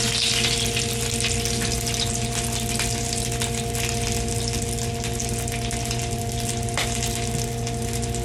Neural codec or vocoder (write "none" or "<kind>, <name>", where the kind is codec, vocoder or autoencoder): none